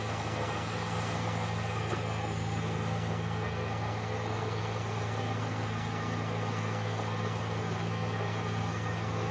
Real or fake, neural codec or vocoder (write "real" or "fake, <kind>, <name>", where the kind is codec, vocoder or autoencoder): fake, codec, SNAC